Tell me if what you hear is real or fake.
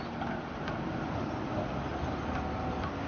real